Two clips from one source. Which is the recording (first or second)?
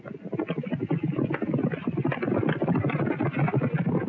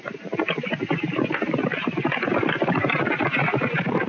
first